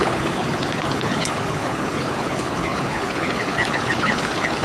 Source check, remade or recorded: remade